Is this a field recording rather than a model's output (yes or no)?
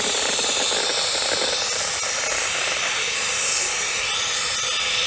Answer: yes